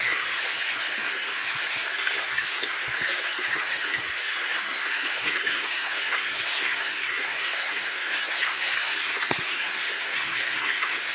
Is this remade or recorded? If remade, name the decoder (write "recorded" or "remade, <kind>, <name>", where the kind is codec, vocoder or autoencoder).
remade, codec, SNAC